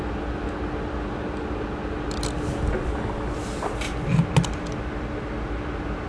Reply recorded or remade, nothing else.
recorded